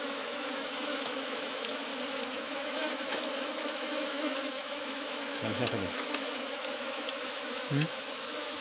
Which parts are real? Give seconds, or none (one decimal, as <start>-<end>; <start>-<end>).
1.9-2.4